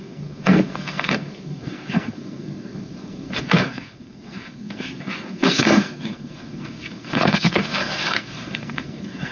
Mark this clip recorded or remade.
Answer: remade